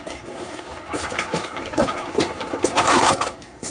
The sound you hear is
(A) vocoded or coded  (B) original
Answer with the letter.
A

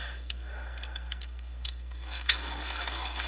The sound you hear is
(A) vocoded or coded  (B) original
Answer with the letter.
A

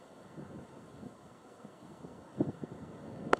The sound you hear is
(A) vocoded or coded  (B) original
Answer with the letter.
A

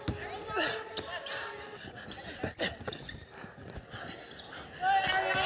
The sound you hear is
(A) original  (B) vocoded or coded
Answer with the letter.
A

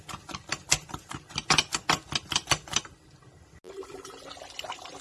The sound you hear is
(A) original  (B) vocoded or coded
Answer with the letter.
A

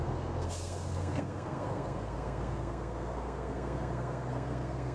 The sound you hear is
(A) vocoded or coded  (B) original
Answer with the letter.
A